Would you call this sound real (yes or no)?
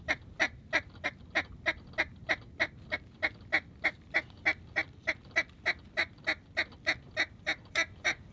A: yes